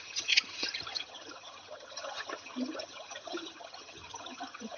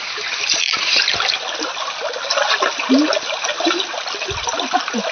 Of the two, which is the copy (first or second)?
first